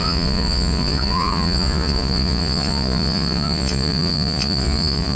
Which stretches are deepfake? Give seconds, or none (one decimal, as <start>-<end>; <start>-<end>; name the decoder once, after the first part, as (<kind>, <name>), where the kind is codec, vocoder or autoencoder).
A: 0.0-5.2 (vocoder, Vocos)